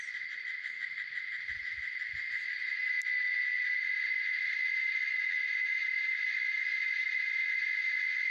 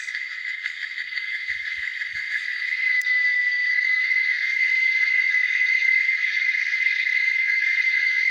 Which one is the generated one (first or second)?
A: second